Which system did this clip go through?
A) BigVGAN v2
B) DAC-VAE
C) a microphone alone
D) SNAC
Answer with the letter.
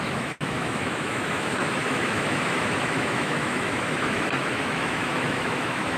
B